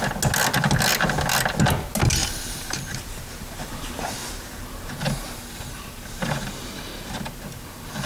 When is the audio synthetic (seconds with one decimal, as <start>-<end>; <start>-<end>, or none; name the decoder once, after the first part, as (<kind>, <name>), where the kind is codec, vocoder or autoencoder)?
2.2-7.1 (vocoder, BigVGAN v2)